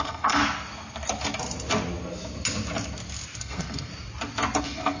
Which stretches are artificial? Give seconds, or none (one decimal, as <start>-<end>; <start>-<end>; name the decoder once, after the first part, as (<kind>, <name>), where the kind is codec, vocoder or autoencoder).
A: 0.0-0.4 (codec, SNAC); 3.4-3.9; 4.6-5.0